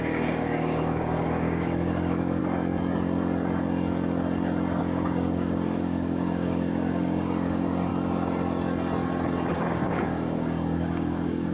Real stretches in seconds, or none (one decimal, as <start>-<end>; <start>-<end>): 2.4-4.8; 7.9-9.5